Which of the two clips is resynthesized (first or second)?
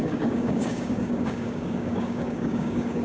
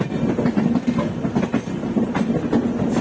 first